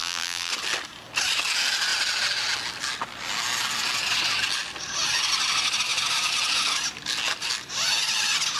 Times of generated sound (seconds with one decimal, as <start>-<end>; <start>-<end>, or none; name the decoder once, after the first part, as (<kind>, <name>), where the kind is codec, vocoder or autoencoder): 0.0-0.5 (vocoder, BigVGAN v2)